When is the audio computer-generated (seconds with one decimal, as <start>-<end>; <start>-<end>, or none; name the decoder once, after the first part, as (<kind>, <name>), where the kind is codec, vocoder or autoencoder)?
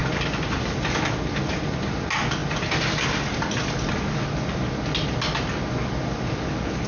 none